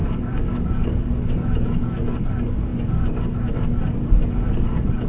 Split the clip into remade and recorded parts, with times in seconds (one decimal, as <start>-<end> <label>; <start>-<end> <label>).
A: 0.0-5.1 remade